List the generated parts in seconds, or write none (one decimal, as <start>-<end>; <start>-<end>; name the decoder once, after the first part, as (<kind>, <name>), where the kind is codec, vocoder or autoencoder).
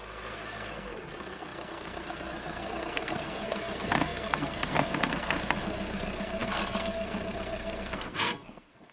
0.0-8.9 (codec, SNAC)